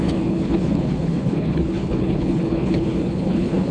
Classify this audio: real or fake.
fake